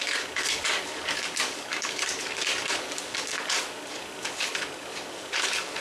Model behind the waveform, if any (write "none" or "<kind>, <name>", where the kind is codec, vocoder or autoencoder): codec, DAC